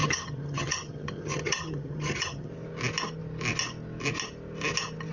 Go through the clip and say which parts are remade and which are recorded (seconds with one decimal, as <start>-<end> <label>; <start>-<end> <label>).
0.0-2.5 remade; 2.5-5.1 recorded